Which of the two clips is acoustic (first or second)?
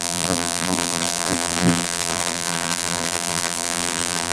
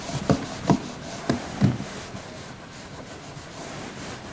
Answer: second